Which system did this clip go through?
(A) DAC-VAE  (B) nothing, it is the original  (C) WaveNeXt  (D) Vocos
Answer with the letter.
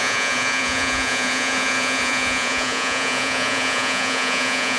D